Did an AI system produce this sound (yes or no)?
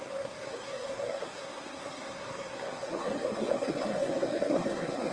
yes